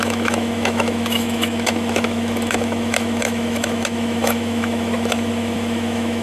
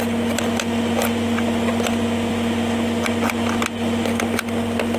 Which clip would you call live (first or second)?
second